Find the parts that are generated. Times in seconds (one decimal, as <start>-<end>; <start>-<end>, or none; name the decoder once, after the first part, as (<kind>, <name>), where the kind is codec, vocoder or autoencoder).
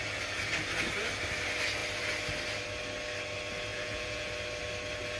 3.7-4.3 (vocoder, Vocos)